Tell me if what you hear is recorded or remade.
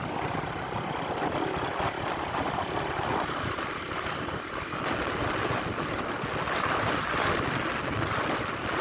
recorded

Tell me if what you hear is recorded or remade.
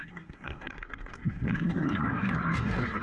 remade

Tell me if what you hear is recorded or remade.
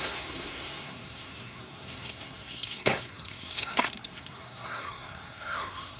remade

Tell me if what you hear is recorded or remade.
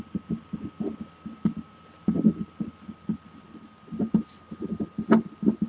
recorded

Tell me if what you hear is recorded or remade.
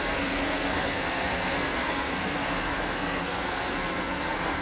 remade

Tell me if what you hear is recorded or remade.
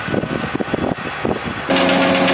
recorded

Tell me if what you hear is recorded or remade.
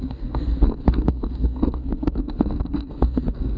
remade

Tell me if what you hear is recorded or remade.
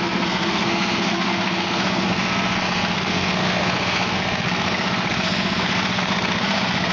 remade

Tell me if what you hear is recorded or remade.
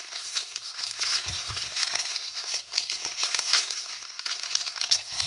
remade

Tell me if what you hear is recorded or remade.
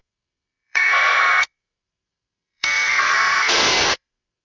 remade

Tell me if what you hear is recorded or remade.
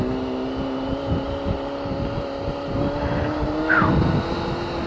recorded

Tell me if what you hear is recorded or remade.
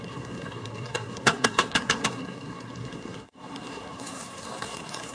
remade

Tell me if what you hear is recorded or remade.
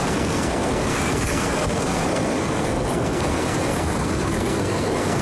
remade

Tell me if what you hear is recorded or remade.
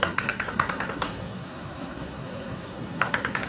remade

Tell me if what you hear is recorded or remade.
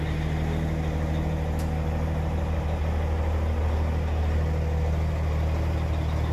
recorded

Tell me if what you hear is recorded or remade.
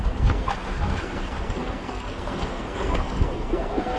remade